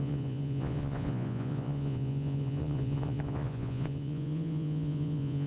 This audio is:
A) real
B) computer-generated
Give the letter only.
B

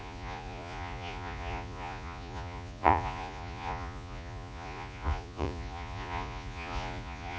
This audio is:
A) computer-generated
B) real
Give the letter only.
A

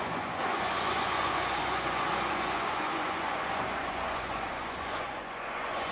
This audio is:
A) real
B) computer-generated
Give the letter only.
B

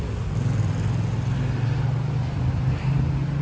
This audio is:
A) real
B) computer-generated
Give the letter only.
A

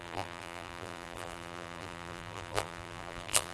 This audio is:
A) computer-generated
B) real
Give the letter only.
A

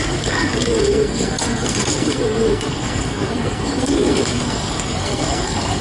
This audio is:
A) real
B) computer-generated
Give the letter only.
B